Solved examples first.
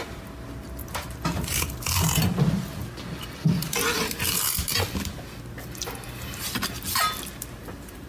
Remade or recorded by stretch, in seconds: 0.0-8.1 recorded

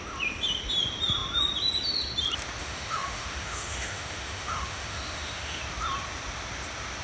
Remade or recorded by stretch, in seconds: 0.0-2.6 recorded; 2.6-5.6 remade; 5.6-7.0 recorded

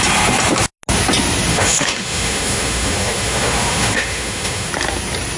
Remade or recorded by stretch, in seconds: 0.0-1.5 recorded; 1.5-4.7 remade; 4.7-5.4 recorded

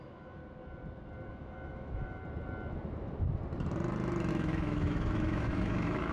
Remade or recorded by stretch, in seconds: 0.0-0.4 remade; 0.4-1.3 recorded; 1.3-2.2 remade; 2.2-4.3 recorded; 4.3-6.1 remade

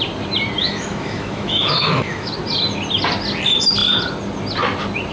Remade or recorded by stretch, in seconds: 0.0-0.6 recorded; 0.6-2.3 remade; 2.3-5.1 recorded